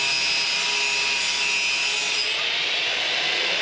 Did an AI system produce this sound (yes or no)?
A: no